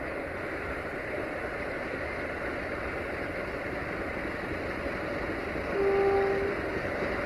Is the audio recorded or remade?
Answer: recorded